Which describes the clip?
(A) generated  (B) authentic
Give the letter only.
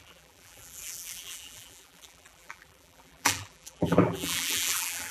A